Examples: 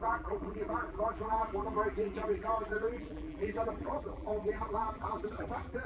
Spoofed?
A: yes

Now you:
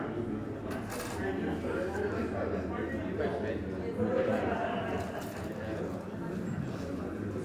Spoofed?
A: no